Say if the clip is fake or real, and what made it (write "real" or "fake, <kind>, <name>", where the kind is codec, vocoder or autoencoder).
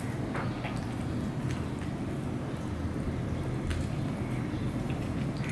real